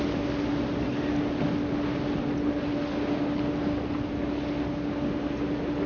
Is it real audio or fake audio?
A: real